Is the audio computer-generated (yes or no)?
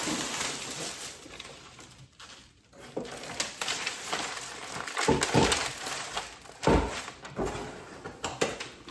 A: no